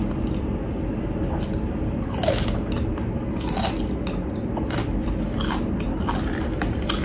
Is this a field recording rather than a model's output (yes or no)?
yes